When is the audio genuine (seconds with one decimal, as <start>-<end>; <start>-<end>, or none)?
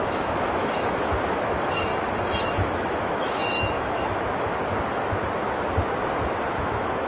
1.9-2.4; 4.5-6.6